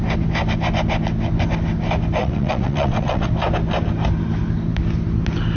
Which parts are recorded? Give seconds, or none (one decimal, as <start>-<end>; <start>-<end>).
0.0-2.2; 3.3-5.6